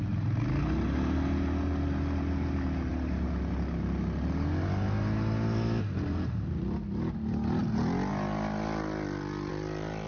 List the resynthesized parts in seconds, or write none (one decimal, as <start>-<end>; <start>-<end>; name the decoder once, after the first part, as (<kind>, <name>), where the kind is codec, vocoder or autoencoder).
none